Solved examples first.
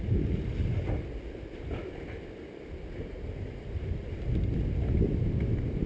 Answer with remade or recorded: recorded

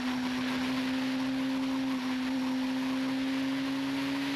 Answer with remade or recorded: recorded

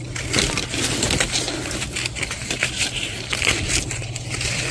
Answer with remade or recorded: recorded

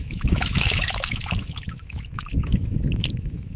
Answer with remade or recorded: remade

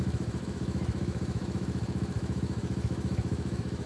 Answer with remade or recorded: remade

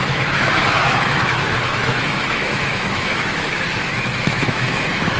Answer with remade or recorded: remade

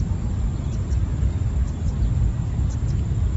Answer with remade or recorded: recorded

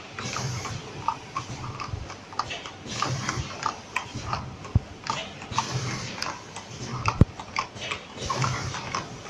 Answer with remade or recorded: recorded